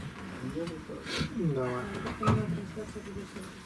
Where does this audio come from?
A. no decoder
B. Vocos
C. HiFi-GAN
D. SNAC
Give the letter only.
A